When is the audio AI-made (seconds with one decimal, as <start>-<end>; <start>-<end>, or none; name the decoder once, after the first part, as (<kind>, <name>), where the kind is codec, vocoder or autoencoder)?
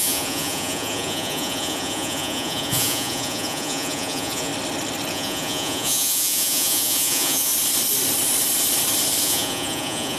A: 0.0-4.5 (vocoder, Vocos); 5.1-7.5; 9.2-10.2